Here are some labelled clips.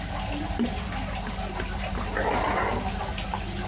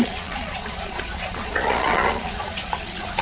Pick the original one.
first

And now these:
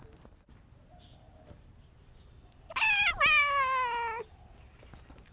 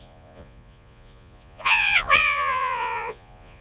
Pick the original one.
first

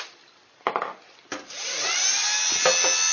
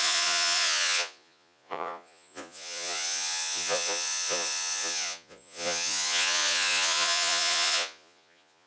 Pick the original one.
first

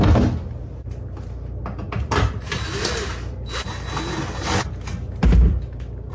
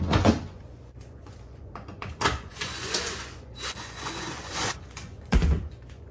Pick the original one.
first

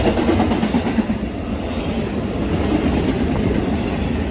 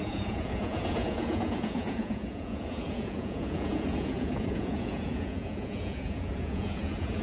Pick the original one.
first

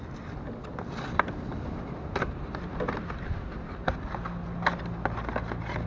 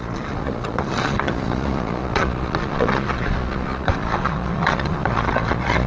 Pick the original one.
first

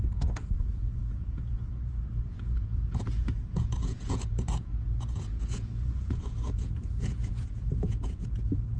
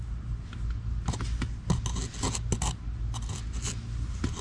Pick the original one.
second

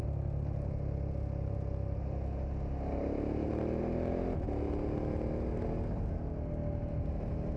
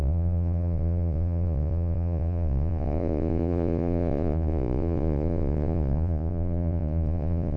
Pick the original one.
first